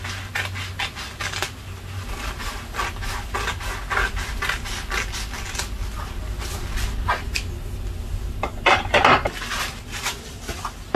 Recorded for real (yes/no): yes